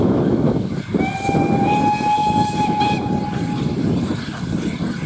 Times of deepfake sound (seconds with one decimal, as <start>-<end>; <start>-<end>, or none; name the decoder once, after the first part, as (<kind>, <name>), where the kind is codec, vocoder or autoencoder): 0.0-0.7 (autoencoder, DAC-VAE); 2.2-2.8